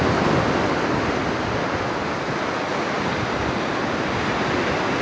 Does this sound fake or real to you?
real